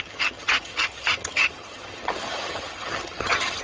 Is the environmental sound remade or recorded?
remade